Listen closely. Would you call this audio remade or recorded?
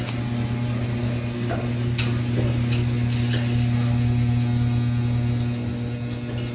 recorded